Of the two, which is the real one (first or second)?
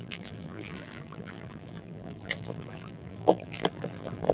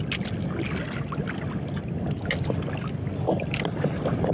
second